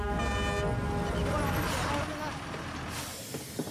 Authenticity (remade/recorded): recorded